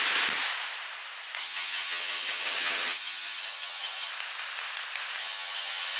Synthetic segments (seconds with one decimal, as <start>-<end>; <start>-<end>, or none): 1.4-4.1; 5.2-6.0